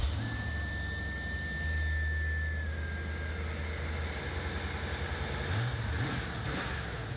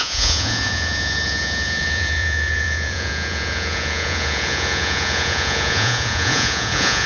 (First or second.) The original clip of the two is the first